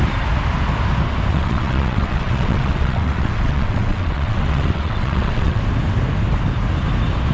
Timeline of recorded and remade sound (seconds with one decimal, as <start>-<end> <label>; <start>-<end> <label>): 0.0-1.3 recorded; 1.3-5.6 remade; 5.6-7.3 recorded